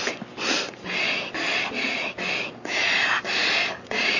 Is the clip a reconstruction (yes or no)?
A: no